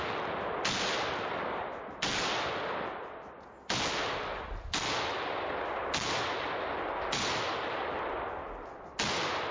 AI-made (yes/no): no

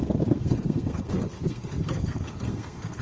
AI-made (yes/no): yes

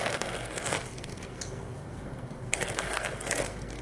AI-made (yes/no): yes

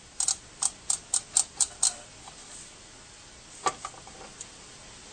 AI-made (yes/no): no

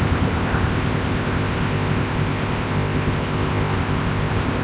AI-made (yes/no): yes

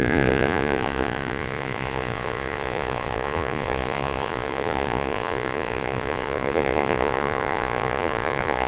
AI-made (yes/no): yes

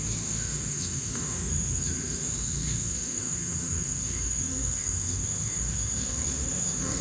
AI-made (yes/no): yes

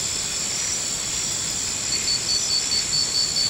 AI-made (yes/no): no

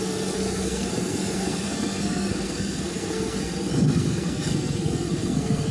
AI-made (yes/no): yes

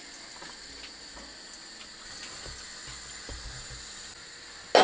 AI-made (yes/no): no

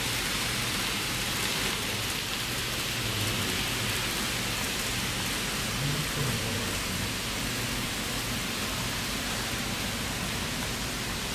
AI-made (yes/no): no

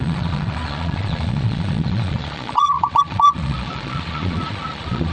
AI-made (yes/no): yes